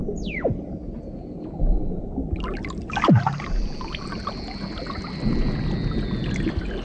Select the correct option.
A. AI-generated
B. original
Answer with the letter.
B